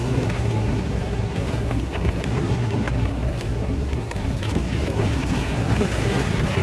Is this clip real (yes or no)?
no